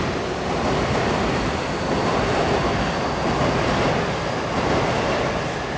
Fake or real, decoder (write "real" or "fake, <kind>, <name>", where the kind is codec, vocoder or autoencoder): real